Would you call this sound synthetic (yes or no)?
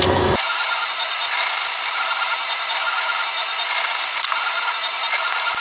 no